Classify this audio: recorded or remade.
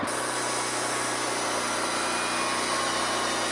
recorded